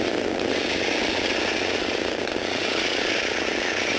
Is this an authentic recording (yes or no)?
yes